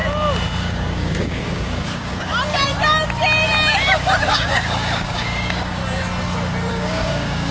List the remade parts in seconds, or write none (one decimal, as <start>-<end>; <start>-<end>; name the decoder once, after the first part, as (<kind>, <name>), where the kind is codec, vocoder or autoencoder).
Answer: 0.6-2.3 (codec, DAC); 4.3-5.8; 6.7-7.5